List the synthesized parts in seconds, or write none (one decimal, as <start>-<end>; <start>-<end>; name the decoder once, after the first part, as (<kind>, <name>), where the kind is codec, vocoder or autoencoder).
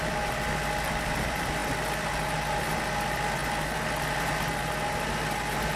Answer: 0.0-1.6 (vocoder, BigVGAN v2); 2.6-3.4